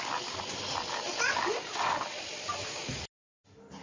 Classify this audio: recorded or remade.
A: recorded